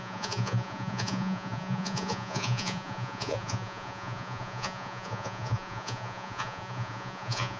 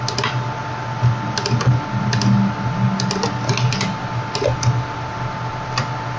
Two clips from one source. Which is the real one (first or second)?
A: second